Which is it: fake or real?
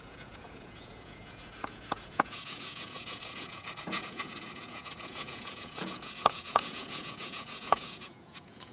fake